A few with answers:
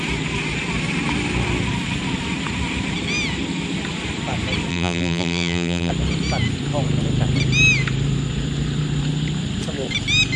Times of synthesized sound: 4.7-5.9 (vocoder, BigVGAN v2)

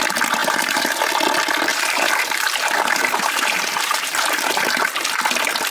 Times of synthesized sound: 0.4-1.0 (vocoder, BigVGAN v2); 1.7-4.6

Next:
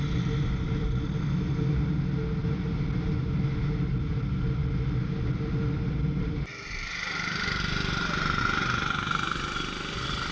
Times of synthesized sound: 6.5-8.4 (vocoder, BigVGAN v2)

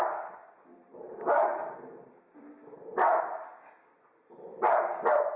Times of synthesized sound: 0.7-2.5 (vocoder, BigVGAN v2)

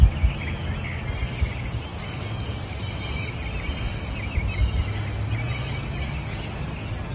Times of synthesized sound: 1.9-3.4 (vocoder, BigVGAN v2)